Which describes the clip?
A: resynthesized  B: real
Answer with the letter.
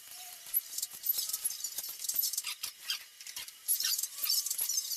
A